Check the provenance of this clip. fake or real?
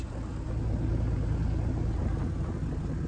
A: real